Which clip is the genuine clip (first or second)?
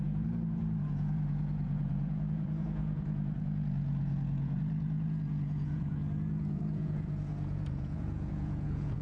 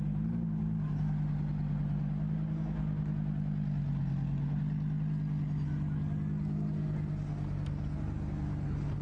second